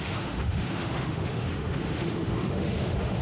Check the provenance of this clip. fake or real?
fake